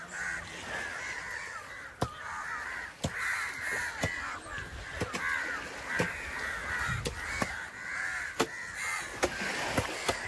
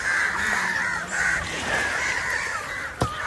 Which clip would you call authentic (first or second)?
first